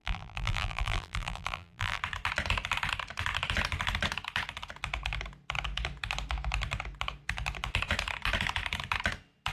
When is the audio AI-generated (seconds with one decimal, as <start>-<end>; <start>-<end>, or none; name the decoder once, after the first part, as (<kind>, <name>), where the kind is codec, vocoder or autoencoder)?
0.0-2.0 (vocoder, BigVGAN v2)